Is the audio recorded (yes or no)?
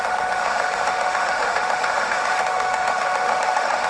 no